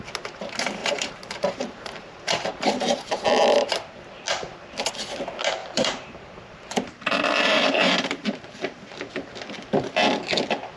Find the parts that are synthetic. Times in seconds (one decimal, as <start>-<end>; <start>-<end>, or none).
0.8-3.2; 5.6-9.1